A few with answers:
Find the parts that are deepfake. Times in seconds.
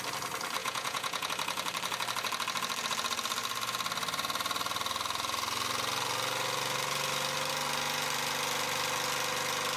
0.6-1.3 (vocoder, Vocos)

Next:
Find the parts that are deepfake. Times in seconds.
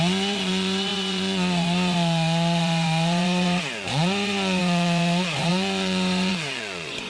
0.0-7.1 (vocoder, Vocos)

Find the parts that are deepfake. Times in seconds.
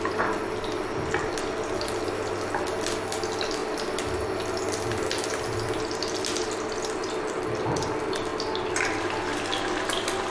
none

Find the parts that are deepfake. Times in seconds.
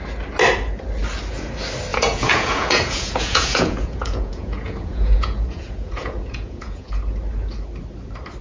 1.9-6.9 (vocoder, Vocos)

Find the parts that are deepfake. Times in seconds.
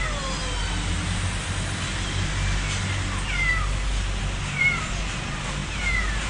none